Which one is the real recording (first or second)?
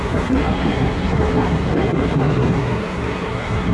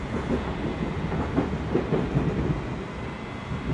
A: second